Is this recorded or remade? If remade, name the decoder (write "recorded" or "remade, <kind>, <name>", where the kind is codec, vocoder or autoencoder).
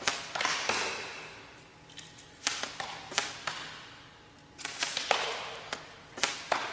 recorded